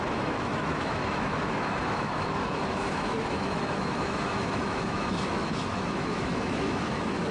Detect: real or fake fake